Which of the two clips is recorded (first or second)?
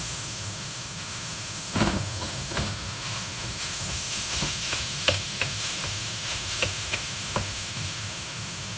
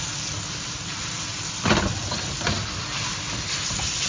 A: second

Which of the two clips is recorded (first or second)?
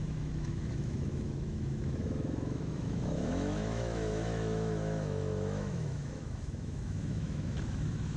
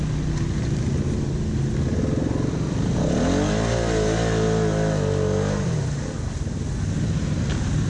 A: second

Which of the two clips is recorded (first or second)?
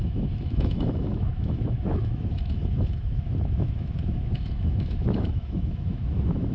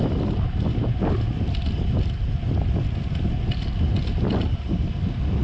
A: second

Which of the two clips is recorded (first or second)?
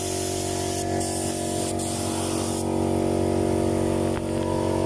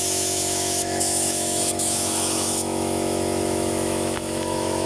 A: first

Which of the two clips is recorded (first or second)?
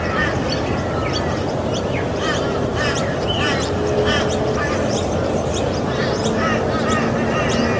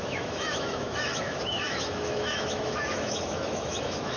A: first